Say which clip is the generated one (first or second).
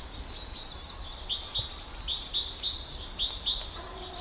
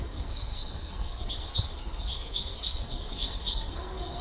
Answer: second